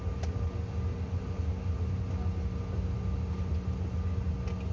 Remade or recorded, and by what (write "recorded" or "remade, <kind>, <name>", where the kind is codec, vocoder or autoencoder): recorded